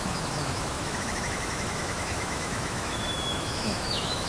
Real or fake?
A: fake